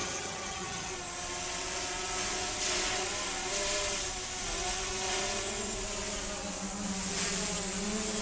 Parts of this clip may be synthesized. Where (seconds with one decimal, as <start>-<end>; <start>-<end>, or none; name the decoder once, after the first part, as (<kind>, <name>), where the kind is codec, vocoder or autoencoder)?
0.0-0.9 (vocoder, HiFi-GAN)